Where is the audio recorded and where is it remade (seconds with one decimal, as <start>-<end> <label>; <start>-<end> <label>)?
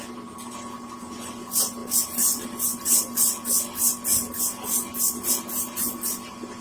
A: 0.0-6.6 recorded